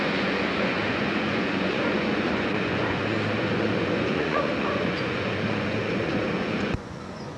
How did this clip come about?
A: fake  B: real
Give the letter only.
A